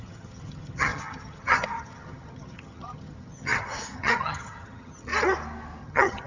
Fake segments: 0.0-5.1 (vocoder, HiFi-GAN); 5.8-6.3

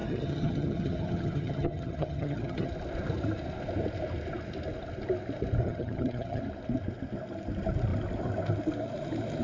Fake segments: 0.0-2.7 (vocoder, HiFi-GAN); 5.6-6.4

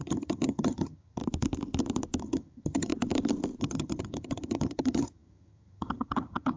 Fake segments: 0.0-1.2 (vocoder, HiFi-GAN); 2.2-2.9; 3.6-6.6